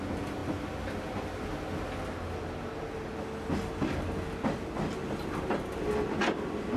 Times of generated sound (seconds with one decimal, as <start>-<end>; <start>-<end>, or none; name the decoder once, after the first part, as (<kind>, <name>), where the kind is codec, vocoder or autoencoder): none